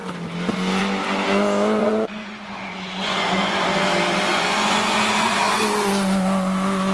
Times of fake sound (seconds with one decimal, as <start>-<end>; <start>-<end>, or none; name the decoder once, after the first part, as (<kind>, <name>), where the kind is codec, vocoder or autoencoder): 1.8-3.6 (vocoder, Vocos); 4.3-5.6